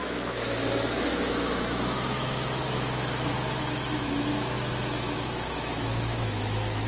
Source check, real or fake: fake